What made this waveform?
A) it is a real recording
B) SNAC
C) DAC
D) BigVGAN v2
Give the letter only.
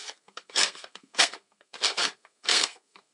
B